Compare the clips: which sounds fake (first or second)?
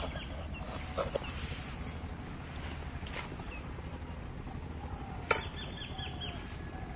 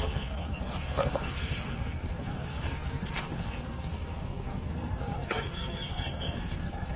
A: second